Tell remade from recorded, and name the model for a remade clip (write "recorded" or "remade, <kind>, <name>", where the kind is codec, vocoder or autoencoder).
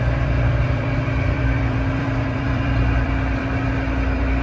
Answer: remade, vocoder, BigVGAN v2